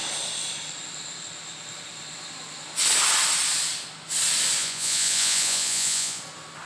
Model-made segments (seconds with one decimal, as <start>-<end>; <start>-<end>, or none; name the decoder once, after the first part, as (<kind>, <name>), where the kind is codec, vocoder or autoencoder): 4.6-6.2 (vocoder, Vocos)